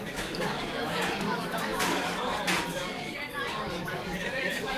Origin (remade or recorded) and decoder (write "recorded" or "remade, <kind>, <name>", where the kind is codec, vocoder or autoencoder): remade, codec, DAC